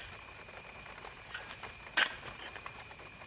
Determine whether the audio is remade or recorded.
remade